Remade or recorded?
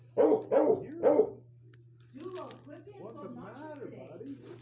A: recorded